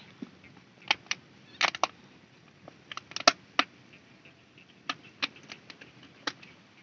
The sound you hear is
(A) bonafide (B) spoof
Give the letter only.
A